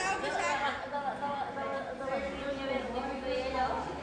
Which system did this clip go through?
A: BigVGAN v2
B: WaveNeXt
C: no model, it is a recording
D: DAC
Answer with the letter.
C